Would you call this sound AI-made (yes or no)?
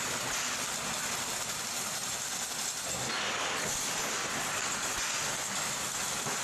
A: no